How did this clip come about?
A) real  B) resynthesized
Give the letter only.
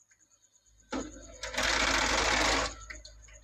A